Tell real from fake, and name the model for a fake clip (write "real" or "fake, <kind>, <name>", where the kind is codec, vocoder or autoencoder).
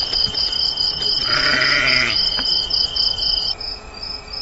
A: real